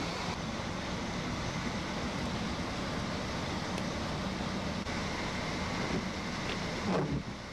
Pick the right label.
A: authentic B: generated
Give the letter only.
A